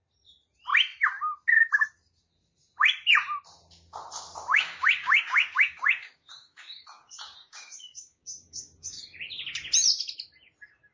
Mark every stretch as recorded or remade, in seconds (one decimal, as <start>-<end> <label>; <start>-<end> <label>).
0.0-4.5 recorded; 4.5-9.0 remade; 9.0-10.9 recorded